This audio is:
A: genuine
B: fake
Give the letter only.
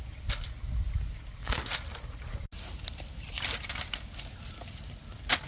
A